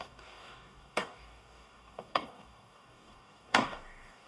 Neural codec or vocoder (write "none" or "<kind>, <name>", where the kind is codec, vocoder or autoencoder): codec, DAC